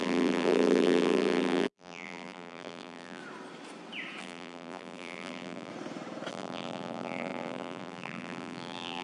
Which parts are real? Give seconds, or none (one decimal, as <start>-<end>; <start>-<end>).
3.2-4.2; 5.7-6.3